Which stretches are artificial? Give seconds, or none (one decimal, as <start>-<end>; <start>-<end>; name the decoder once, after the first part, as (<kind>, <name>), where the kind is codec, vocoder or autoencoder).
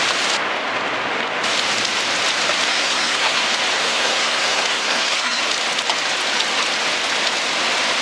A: 2.7-3.4 (codec, SNAC); 3.8-5.4